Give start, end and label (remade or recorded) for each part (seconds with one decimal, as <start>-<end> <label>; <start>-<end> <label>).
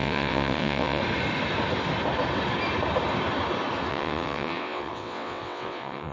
0.0-1.0 remade; 1.0-3.9 recorded; 3.9-6.1 remade